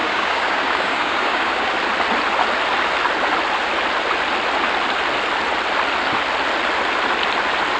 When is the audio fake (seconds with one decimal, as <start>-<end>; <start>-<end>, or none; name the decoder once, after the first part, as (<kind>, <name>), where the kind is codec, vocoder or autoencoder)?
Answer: 0.0-1.7 (codec, DAC)